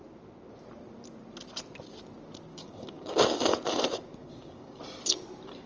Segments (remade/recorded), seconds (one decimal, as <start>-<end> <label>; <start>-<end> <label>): 0.0-2.5 recorded; 2.5-3.5 remade; 3.5-4.2 recorded; 4.2-4.8 remade; 4.8-5.7 recorded